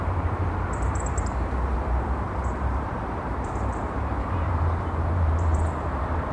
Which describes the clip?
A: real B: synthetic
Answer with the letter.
B